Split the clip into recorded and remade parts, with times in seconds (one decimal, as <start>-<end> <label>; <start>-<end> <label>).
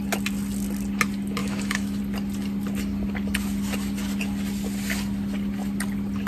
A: 0.0-1.4 recorded; 1.4-2.0 remade; 2.0-6.3 recorded